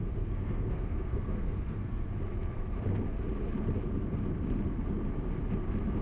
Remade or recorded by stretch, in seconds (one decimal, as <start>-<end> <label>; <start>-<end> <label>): 0.0-2.1 remade; 2.1-6.0 recorded